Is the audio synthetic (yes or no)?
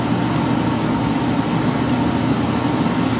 no